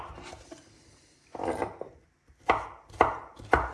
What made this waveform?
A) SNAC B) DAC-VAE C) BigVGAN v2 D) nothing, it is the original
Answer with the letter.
D